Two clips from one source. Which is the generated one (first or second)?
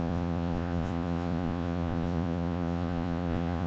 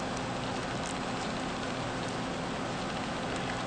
first